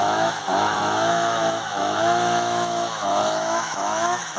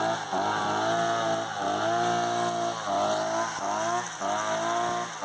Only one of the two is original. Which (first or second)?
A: second